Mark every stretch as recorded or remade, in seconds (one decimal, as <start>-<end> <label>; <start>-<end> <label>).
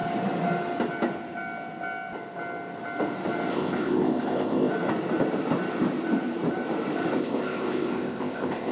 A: 0.0-3.5 recorded; 3.5-4.7 remade; 4.7-7.2 recorded; 7.2-8.7 remade